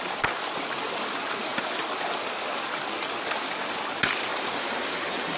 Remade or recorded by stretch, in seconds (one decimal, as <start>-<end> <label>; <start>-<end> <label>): 0.0-4.3 recorded; 4.3-5.4 remade